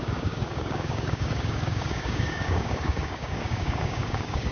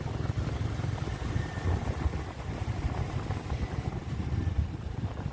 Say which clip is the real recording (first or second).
second